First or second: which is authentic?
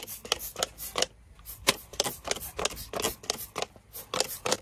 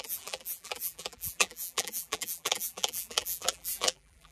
first